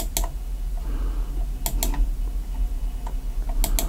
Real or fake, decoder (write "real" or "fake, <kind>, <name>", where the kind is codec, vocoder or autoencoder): real